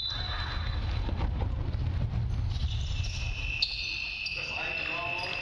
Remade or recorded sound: recorded